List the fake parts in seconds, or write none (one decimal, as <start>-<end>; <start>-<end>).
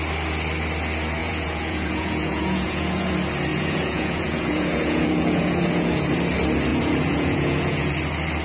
1.2-3.1; 3.5-6.1; 6.7-7.9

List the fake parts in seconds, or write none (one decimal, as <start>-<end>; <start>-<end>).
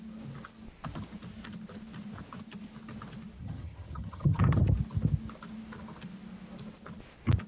3.4-4.4